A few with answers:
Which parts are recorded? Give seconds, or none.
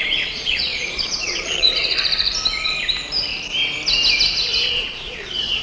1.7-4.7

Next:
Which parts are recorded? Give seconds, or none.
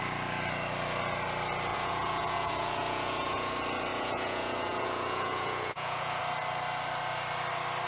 0.0-1.7; 3.5-3.9; 6.2-7.9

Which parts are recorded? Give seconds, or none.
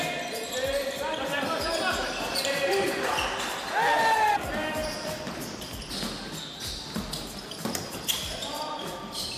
0.0-4.8; 5.9-9.4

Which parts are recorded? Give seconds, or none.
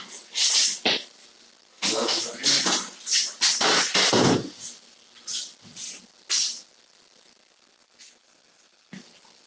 0.0-1.7; 2.2-9.5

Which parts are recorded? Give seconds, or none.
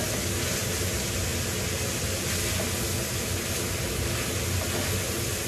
0.0-5.5